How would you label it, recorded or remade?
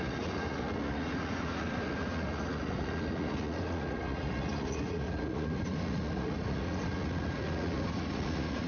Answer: remade